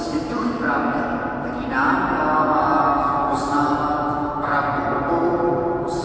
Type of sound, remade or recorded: recorded